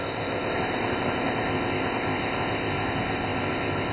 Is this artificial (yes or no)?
yes